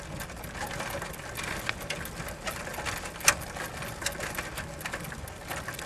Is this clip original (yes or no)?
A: yes